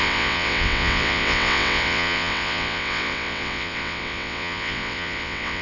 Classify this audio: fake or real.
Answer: fake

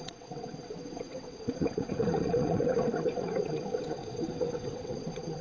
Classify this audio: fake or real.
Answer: fake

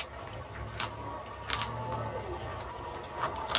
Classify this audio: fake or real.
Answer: real